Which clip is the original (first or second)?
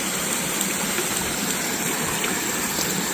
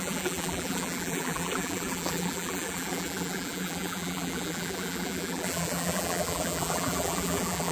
first